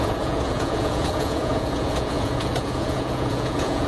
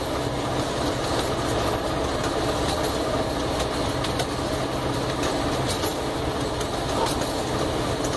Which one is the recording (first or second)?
second